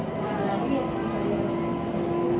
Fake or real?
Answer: real